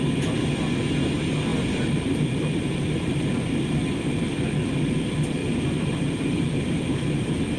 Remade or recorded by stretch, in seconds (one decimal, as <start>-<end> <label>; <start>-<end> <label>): 0.0-1.5 recorded; 1.5-4.0 remade; 4.0-7.6 recorded